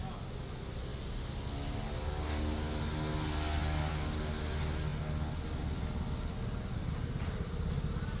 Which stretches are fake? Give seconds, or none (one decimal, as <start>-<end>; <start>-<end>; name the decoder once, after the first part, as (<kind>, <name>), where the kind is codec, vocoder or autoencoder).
none